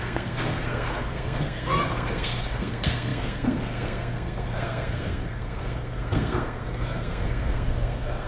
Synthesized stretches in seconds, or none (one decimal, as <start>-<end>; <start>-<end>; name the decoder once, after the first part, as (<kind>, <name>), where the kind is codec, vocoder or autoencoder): 0.0-8.3 (codec, SNAC)